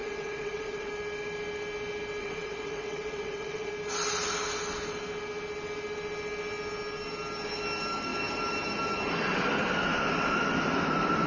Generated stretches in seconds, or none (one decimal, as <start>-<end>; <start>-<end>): 0.0-0.9; 2.2-3.7